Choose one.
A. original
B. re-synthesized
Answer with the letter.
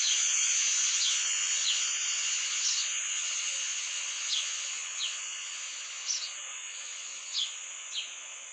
B